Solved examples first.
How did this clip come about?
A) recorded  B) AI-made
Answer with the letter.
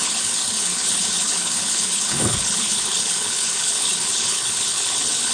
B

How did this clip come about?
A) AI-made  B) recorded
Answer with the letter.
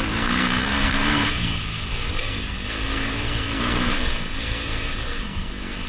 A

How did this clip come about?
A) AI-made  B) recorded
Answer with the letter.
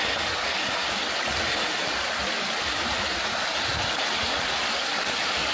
B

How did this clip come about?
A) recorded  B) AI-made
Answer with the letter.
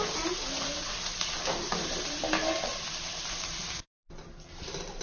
B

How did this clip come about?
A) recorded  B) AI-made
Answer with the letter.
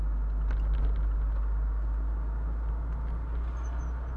A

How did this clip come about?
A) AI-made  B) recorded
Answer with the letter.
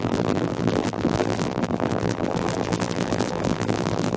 A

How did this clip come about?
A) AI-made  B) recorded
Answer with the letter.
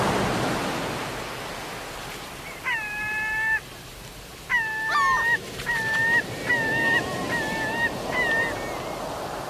B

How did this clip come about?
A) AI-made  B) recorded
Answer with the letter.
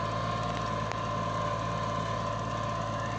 B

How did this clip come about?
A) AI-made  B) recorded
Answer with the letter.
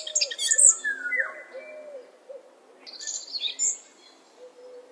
B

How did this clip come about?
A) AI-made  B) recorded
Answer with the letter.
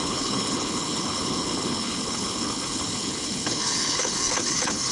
A